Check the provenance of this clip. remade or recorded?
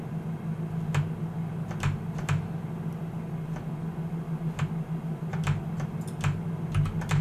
recorded